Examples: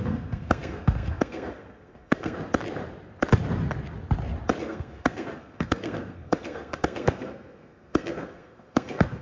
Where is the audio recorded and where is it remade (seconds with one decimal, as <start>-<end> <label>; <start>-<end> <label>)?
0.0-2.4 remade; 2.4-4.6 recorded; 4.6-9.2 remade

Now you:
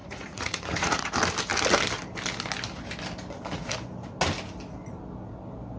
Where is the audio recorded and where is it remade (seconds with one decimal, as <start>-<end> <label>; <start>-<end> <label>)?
0.0-1.1 remade; 1.1-5.8 recorded

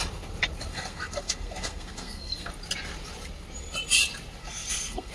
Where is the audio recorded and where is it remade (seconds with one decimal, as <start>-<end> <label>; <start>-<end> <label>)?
0.0-0.7 recorded; 0.7-2.5 remade; 2.5-4.4 recorded; 4.4-5.1 remade